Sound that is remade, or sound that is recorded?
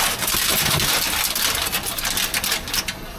recorded